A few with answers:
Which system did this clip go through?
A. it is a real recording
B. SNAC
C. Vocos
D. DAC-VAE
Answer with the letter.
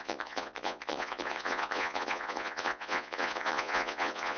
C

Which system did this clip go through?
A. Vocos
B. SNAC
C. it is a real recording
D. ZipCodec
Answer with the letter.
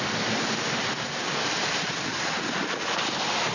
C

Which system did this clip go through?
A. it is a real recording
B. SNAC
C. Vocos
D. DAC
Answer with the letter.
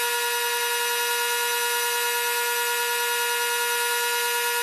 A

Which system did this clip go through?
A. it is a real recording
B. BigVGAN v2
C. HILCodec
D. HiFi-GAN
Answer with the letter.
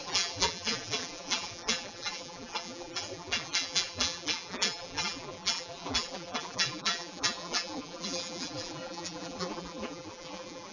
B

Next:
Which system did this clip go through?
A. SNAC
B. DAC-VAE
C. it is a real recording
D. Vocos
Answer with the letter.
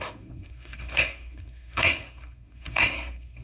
A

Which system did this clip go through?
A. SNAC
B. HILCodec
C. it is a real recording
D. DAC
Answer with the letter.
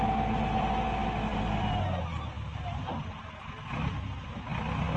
C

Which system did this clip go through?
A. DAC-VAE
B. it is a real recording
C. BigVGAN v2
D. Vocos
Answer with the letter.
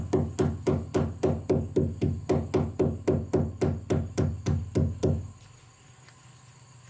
B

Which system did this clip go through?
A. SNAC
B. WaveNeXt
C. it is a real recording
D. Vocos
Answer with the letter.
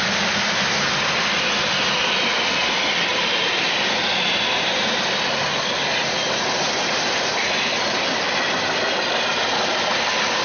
C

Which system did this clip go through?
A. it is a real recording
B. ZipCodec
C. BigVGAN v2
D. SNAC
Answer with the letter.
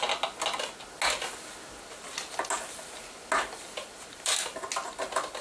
A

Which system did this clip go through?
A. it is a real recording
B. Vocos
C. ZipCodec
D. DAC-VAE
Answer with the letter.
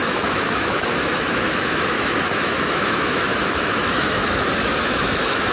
D